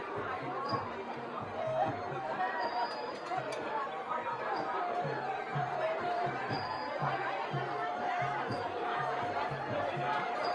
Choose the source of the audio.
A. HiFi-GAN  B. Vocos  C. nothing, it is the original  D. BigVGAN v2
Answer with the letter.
D